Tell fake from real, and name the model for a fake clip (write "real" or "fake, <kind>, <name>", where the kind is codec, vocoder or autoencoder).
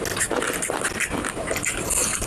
real